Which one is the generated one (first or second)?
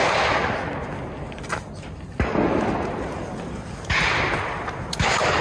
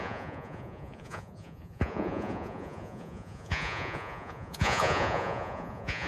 second